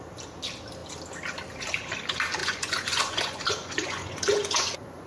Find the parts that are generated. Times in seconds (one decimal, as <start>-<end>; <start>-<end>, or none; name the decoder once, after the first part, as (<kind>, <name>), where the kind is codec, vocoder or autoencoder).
2.4-5.1 (vocoder, Vocos)